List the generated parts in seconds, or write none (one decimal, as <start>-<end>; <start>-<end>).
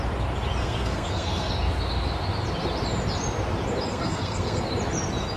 0.6-1.5; 3.9-4.6